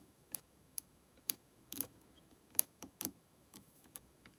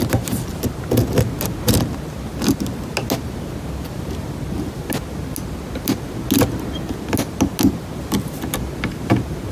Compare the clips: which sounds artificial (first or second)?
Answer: first